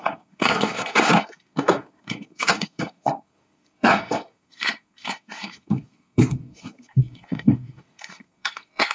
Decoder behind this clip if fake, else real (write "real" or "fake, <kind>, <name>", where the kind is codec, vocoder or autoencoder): fake, codec, SNAC